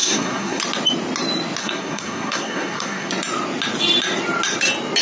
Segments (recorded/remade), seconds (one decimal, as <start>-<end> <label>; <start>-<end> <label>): 0.0-0.6 remade; 0.6-1.6 recorded; 1.6-3.1 remade; 3.1-5.0 recorded